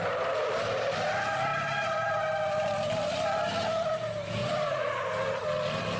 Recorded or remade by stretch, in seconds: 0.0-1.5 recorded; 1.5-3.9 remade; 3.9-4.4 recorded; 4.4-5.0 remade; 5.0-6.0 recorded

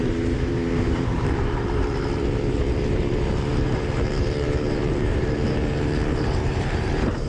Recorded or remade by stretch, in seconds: 0.0-7.3 remade

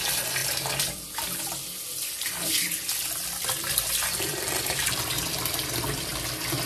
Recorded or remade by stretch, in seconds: 0.0-6.1 remade; 6.1-6.7 recorded

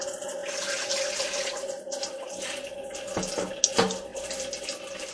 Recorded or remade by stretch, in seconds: 0.0-0.4 recorded; 0.4-3.5 remade; 3.5-4.1 recorded; 4.1-5.1 remade

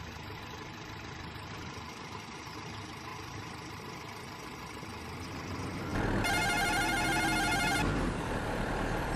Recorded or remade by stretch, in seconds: 0.0-3.1 recorded; 3.1-4.0 remade; 4.0-5.9 recorded; 5.9-9.2 remade

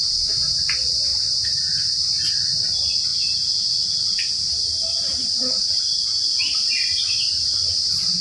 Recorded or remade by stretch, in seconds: 0.0-8.2 recorded

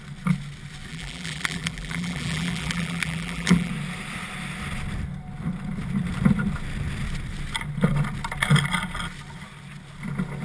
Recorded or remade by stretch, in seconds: 0.0-0.9 recorded; 0.9-3.7 remade; 3.7-10.4 recorded